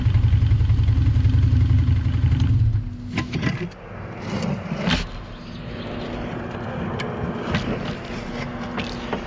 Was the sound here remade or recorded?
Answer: recorded